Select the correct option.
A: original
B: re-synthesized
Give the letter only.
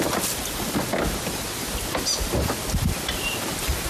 A